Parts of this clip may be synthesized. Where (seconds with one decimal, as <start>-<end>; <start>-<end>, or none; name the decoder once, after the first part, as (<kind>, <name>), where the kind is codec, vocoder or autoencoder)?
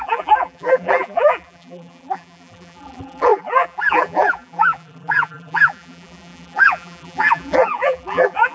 0.0-8.5 (vocoder, BigVGAN v2)